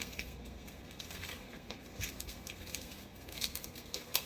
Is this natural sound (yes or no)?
no